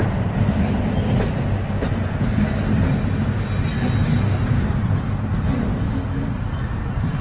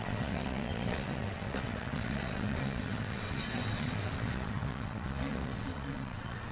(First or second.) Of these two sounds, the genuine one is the first